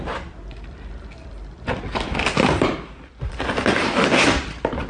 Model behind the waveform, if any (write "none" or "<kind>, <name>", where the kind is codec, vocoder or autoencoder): none